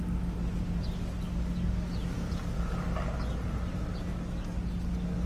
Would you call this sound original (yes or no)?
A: yes